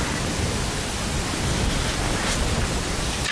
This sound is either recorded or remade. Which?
recorded